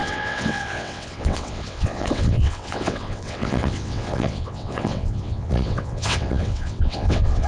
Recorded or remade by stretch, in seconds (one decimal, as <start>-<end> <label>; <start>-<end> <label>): 0.0-7.5 remade

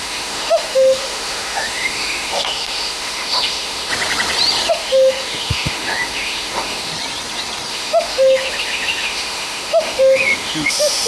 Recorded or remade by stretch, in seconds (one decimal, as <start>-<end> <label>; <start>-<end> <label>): 0.0-3.9 remade; 3.9-4.7 recorded; 4.7-6.9 remade; 6.9-7.7 recorded; 7.7-11.1 remade

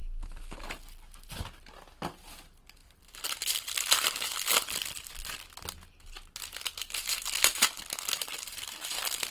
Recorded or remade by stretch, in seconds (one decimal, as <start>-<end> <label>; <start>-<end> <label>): 0.0-2.8 recorded; 2.8-5.1 remade; 5.1-9.3 recorded

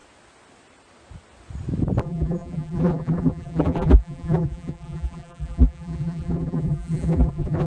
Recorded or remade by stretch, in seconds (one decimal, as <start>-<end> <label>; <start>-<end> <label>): 0.0-2.0 recorded; 2.0-7.7 remade

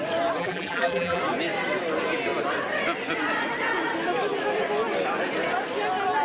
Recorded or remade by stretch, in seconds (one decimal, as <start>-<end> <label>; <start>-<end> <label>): 0.0-0.4 recorded; 0.4-1.2 remade; 1.2-6.2 recorded

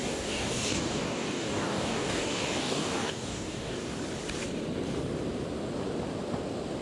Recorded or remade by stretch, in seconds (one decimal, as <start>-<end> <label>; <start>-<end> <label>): 0.0-3.8 remade; 3.8-6.8 recorded

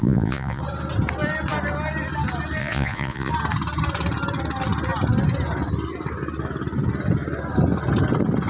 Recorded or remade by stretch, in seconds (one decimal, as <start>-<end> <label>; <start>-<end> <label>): 0.0-0.6 remade; 0.6-2.6 recorded; 2.6-3.3 remade; 3.3-8.5 recorded